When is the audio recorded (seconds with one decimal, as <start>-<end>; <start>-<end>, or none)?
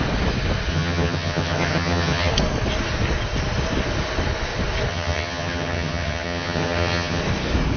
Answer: 0.0-0.7; 2.3-4.9; 7.2-7.8